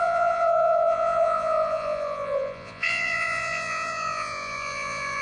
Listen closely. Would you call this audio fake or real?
fake